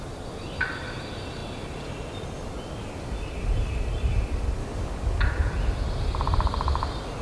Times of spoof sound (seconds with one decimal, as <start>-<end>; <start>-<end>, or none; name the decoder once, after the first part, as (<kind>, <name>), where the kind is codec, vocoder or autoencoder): 4.6-5.2 (codec, DAC)

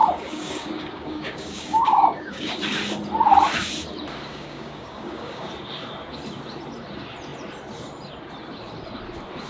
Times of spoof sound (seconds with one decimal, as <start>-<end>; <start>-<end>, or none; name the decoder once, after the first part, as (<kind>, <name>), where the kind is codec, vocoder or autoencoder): 0.0-2.6 (codec, DAC); 4.3-5.5